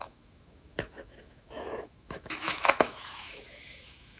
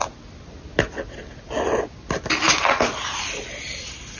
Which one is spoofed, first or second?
first